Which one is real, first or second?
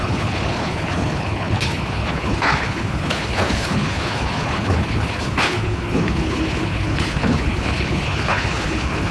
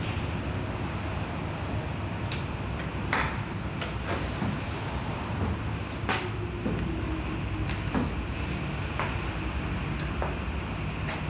second